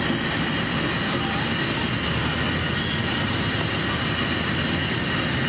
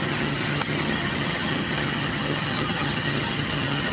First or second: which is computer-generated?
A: second